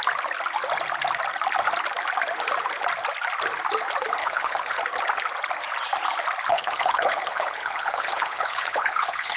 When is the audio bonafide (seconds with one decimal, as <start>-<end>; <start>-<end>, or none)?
0.0-4.2; 4.8-6.5